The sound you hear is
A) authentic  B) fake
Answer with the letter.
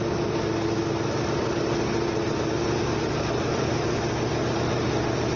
A